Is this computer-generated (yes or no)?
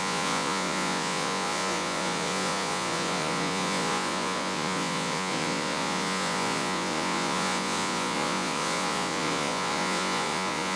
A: yes